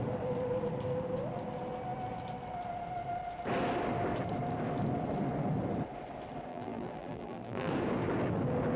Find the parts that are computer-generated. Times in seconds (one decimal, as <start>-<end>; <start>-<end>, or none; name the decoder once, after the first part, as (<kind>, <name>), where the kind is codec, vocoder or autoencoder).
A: 6.5-7.7 (vocoder, BigVGAN v2)

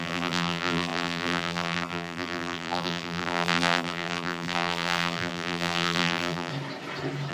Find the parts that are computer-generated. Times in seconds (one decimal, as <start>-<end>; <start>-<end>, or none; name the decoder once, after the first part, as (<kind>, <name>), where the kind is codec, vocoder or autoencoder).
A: 0.0-6.5 (vocoder, BigVGAN v2)